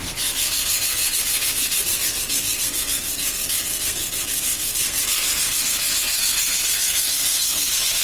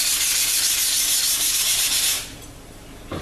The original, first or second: second